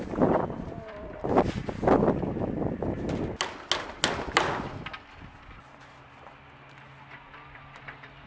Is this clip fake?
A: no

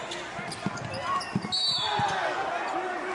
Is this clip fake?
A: no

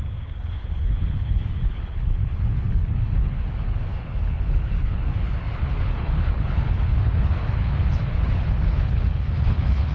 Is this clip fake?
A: yes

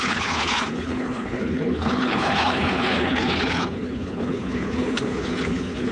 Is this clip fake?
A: yes